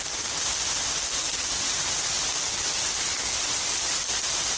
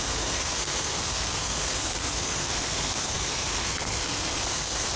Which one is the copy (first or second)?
second